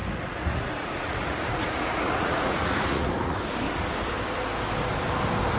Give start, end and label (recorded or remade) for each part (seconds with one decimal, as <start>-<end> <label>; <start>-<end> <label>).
0.0-3.4 remade; 3.4-5.6 recorded